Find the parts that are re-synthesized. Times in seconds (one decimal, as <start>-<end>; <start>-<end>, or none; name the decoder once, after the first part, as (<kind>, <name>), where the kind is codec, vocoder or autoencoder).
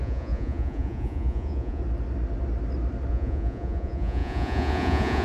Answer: 0.0-1.8 (vocoder, Vocos); 3.1-5.2